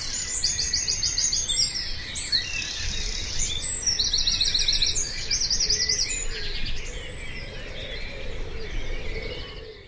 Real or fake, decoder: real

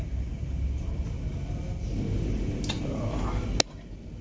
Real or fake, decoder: real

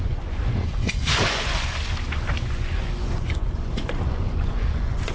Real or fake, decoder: fake, vocoder, Vocos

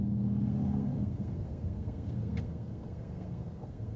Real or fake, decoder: fake, codec, SNAC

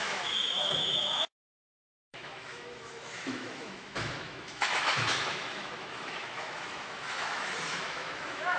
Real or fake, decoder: fake, autoencoder, DAC-VAE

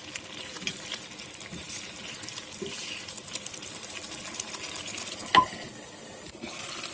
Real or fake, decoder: real